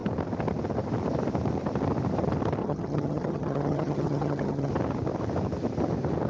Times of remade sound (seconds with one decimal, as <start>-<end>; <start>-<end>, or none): 2.6-4.7